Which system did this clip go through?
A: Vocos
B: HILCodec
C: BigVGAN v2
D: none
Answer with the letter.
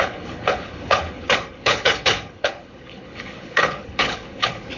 B